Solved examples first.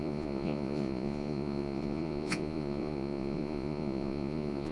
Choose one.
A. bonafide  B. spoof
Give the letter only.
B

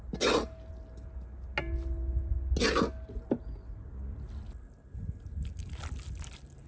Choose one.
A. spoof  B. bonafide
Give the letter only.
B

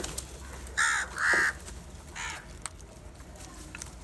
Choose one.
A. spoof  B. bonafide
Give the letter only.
B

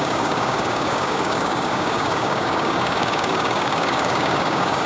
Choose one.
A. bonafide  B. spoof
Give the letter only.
B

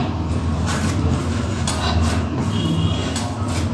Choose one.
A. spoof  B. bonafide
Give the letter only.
B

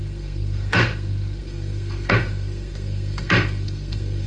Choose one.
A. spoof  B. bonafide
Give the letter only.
A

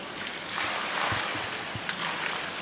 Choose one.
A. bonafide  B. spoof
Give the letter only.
B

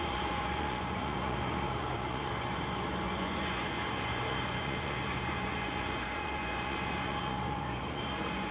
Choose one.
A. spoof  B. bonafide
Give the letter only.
A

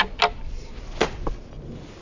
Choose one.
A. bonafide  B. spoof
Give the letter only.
A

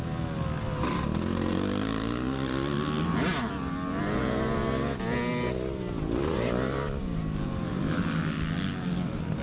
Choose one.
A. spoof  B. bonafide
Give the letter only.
B